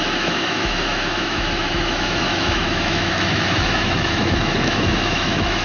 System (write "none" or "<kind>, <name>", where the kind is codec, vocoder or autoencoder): autoencoder, DAC-VAE